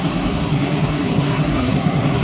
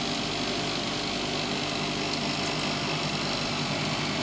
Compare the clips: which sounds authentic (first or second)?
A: second